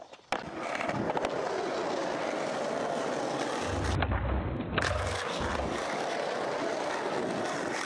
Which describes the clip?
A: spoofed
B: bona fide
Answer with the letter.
B